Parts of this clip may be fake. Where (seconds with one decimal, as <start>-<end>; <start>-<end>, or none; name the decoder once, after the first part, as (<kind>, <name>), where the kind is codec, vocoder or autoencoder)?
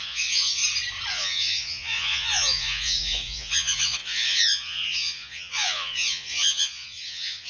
0.0-0.6 (vocoder, Vocos); 1.1-7.5